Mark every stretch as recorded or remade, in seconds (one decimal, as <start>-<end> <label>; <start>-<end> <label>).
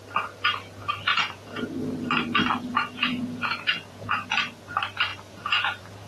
0.0-1.1 recorded; 1.1-1.8 remade; 1.8-2.7 recorded; 2.7-4.5 remade; 4.5-5.1 recorded; 5.1-6.1 remade